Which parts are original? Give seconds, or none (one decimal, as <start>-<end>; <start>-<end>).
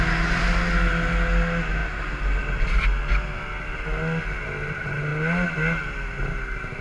0.0-6.8